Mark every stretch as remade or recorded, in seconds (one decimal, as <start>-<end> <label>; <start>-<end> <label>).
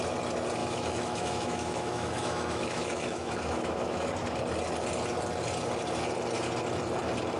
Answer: 0.0-0.6 recorded; 0.6-4.1 remade; 4.1-7.4 recorded